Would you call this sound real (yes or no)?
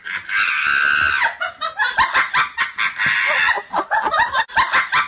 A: yes